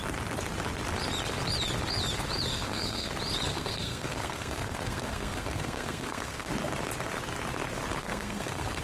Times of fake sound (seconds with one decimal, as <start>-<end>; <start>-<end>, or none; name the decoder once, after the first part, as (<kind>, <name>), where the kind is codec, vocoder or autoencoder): 2.5-3.1 (codec, SNAC); 3.5-6.5; 8.0-8.8